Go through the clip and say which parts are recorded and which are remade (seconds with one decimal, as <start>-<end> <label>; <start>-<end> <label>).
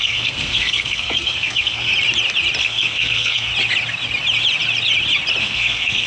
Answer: 0.0-1.9 remade; 1.9-2.6 recorded; 2.6-3.5 remade; 3.5-5.4 recorded; 5.4-6.1 remade